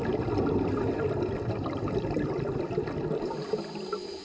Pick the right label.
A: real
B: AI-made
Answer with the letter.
A